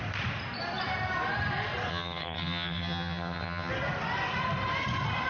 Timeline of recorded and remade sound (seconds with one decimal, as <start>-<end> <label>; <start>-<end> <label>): 0.0-1.9 recorded; 1.9-3.7 remade; 3.7-5.3 recorded